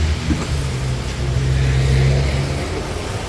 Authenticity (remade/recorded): recorded